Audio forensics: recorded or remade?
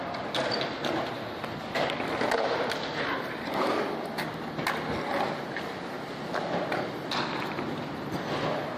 recorded